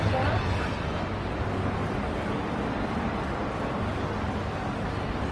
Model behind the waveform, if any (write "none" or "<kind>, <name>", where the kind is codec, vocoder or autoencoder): none